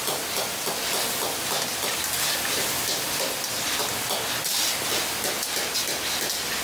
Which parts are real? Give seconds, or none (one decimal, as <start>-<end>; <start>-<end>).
0.0-6.6